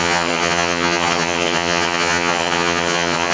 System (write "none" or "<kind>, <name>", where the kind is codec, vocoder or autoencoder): vocoder, HiFi-GAN